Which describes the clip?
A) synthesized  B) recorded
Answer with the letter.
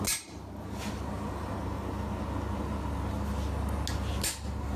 B